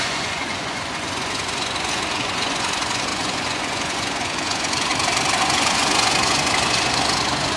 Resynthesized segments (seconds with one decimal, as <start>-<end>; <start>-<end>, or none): 0.0-4.9; 5.4-7.6